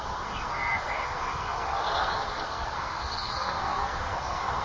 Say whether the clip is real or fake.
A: fake